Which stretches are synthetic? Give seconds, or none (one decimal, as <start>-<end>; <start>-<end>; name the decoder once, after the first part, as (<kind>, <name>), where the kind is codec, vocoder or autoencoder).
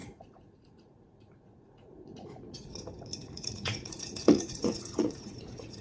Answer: 0.0-5.8 (vocoder, Vocos)